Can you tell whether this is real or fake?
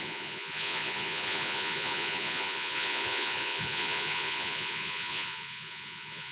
fake